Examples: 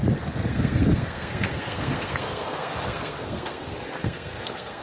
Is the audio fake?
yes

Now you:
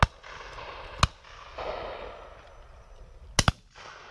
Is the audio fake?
no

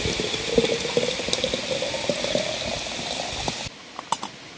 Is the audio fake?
no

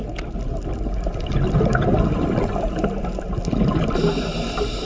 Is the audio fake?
no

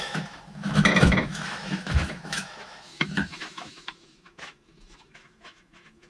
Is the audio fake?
yes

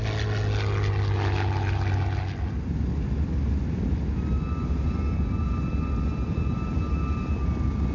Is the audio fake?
no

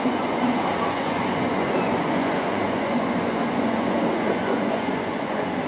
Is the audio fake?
yes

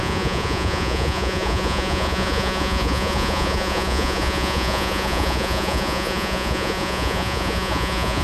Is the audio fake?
yes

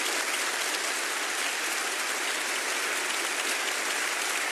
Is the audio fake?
no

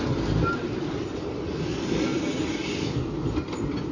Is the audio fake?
no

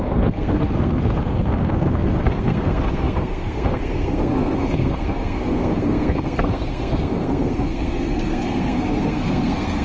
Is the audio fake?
yes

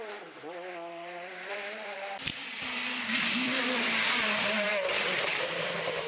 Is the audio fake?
yes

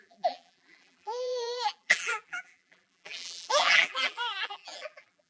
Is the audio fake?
yes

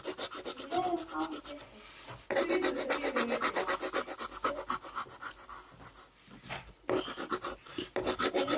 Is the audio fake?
no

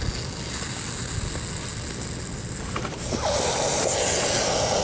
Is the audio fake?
no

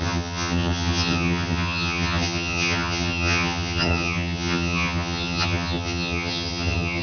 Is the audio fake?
yes